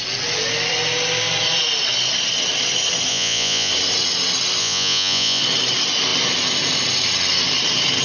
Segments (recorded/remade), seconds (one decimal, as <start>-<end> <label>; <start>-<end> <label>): 0.0-3.1 recorded; 3.1-3.7 remade; 3.7-4.6 recorded; 4.6-5.4 remade; 5.4-8.0 recorded